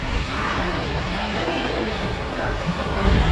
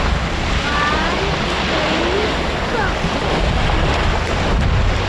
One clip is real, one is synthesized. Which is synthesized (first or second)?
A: first